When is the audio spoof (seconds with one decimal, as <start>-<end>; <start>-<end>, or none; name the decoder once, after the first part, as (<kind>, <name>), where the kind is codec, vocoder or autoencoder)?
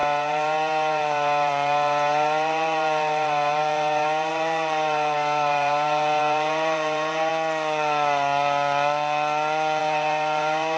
0.0-7.3 (vocoder, BigVGAN v2); 9.8-10.8